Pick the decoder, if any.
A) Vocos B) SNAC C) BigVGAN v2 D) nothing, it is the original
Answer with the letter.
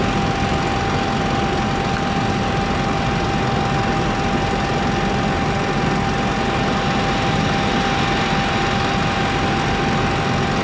D